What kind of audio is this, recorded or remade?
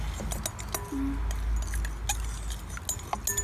recorded